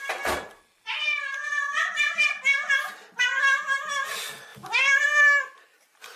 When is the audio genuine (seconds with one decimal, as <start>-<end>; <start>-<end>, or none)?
0.0-6.2